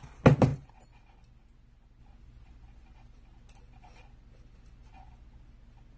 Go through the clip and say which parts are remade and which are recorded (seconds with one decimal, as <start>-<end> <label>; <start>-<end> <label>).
0.0-6.0 recorded